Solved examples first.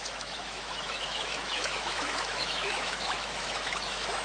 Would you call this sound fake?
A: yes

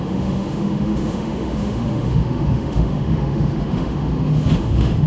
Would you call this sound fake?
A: yes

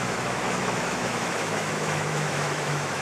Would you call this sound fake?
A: yes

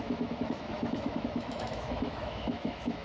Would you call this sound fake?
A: yes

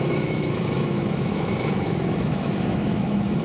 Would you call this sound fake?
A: yes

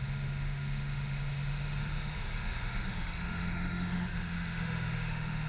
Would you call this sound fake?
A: yes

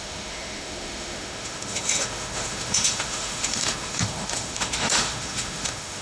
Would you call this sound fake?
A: yes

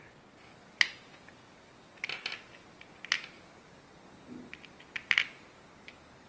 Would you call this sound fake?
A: no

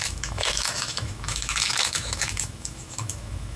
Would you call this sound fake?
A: yes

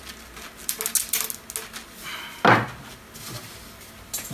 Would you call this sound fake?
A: no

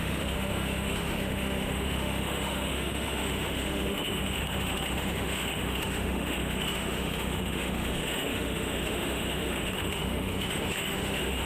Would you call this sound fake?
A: yes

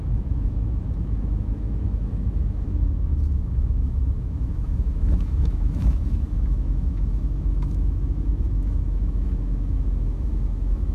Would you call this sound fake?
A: yes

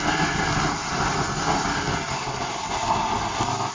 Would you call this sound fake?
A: no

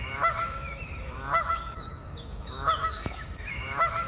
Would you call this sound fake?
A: yes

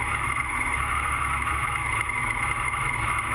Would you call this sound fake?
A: yes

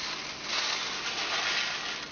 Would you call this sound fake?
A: no